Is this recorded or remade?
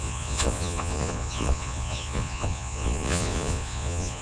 remade